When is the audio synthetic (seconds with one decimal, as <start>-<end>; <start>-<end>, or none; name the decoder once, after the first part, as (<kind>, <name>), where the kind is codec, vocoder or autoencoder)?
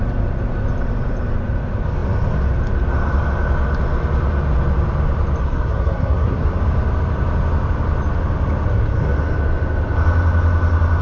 5.4-6.6 (codec, SNAC)